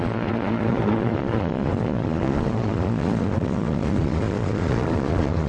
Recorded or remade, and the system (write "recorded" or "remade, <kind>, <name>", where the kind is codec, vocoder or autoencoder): remade, vocoder, Vocos